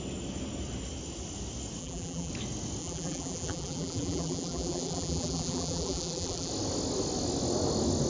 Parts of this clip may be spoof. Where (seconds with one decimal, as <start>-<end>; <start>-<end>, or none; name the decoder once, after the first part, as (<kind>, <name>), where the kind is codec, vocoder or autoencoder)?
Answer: 1.8-2.3 (vocoder, BigVGAN v2); 2.8-6.5